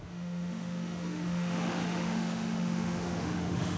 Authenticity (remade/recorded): remade